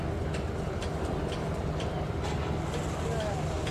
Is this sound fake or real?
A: real